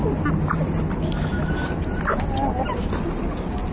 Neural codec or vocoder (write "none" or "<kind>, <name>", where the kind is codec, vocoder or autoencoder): none